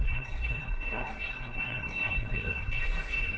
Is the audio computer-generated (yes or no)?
yes